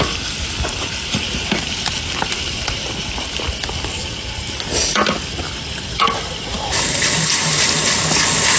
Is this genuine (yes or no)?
yes